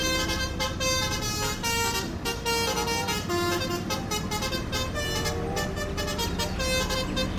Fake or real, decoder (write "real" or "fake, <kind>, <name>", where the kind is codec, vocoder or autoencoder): real